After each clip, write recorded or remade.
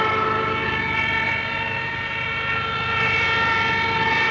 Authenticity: recorded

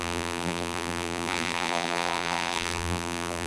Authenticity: remade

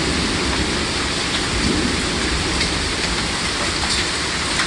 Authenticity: remade